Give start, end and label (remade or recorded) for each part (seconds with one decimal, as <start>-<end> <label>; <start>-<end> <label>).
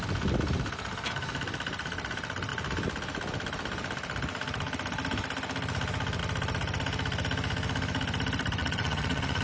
0.0-8.6 recorded; 8.6-9.4 remade